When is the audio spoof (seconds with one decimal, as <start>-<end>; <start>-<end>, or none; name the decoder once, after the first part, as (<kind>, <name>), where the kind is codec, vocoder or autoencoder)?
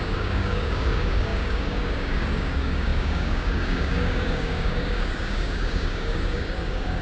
0.0-7.0 (codec, DAC)